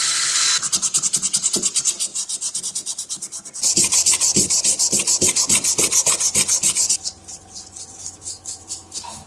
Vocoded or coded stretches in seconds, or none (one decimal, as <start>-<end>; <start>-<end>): 8.0-9.3